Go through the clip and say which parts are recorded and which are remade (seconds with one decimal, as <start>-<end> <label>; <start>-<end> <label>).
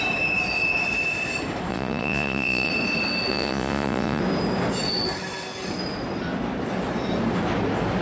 0.0-1.7 recorded; 1.7-2.7 remade; 2.7-3.3 recorded; 3.3-4.2 remade; 4.2-8.0 recorded